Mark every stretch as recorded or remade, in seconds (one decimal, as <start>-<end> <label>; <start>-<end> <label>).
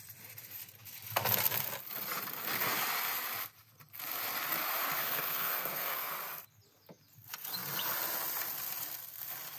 0.0-5.0 recorded; 5.0-6.1 remade; 6.1-9.6 recorded